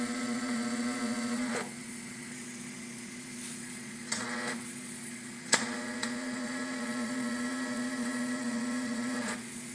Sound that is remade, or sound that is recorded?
remade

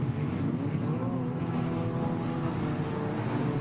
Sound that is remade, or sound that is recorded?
recorded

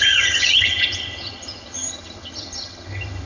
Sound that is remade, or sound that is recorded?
remade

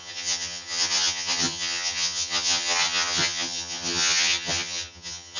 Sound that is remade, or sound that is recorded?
remade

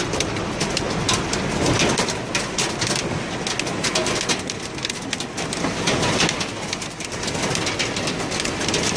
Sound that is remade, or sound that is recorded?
recorded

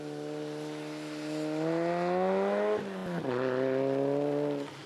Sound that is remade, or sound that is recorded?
recorded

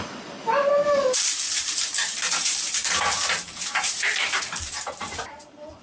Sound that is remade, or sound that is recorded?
remade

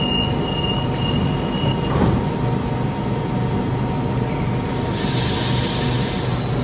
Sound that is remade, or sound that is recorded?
recorded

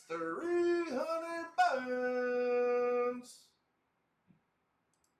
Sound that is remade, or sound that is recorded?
recorded